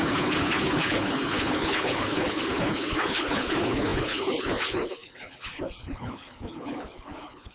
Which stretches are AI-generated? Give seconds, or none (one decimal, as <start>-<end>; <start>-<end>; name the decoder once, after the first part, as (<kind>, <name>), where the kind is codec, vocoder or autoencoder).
0.0-7.5 (codec, HILCodec)